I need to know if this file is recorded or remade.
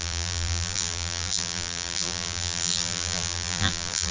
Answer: remade